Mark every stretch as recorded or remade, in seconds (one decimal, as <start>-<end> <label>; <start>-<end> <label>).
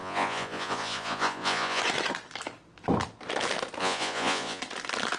0.0-1.8 remade; 1.8-3.8 recorded; 3.8-4.6 remade; 4.6-5.2 recorded